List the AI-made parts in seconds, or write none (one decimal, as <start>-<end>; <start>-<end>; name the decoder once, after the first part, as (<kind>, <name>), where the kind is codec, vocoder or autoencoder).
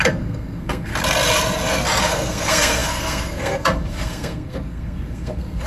0.0-0.9 (codec, SNAC); 2.0-5.7